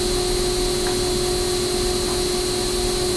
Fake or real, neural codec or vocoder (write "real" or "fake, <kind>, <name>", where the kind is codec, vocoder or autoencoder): real